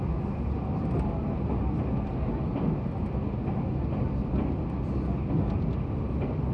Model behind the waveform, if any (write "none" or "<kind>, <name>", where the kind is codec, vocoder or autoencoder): none